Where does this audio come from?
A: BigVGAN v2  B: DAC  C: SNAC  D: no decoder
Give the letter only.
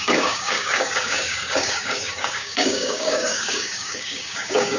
B